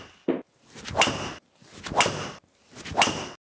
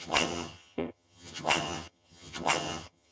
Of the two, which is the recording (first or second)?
first